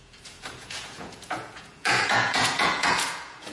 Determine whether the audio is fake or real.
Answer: fake